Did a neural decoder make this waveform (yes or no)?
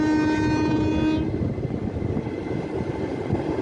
no